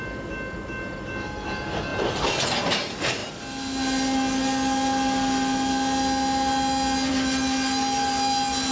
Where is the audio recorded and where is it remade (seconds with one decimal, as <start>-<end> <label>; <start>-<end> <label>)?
0.0-8.7 recorded